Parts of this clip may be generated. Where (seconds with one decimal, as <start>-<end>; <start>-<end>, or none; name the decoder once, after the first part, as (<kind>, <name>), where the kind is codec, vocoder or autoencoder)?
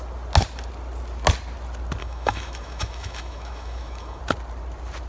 2.0-4.2 (autoencoder, DAC-VAE)